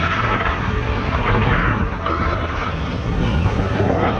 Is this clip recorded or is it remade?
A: remade